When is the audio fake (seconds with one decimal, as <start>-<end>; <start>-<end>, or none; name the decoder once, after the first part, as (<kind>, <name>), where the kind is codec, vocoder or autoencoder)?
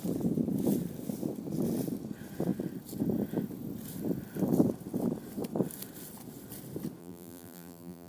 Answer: 7.0-8.1 (vocoder, BigVGAN v2)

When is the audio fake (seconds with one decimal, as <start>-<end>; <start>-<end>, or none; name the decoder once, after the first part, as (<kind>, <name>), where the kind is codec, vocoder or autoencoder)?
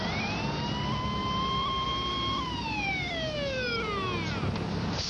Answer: 1.2-3.0 (vocoder, BigVGAN v2)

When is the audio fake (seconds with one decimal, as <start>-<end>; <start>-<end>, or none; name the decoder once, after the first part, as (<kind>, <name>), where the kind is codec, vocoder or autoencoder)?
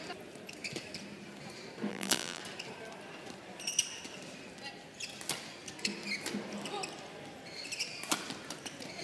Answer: 1.9-2.4 (vocoder, BigVGAN v2)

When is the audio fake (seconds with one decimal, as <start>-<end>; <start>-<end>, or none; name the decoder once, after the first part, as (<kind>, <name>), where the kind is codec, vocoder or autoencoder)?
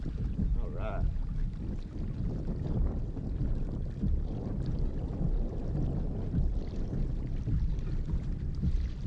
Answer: 0.0-9.1 (vocoder, BigVGAN v2)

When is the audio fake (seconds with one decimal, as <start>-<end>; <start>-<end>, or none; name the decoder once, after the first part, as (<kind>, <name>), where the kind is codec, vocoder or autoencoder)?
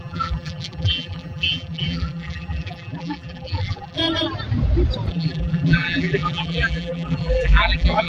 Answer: 0.0-4.0 (vocoder, BigVGAN v2); 5.1-8.1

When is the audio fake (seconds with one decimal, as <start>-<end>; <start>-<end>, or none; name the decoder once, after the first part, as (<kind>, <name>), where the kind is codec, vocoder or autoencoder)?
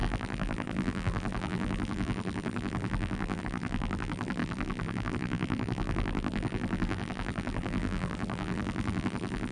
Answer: 0.0-9.5 (vocoder, BigVGAN v2)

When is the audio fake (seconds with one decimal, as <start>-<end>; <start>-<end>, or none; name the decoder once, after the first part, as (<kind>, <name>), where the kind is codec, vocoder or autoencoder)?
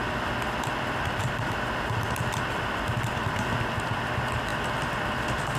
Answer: 0.0-3.4 (vocoder, BigVGAN v2)